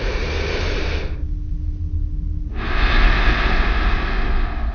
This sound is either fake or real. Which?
real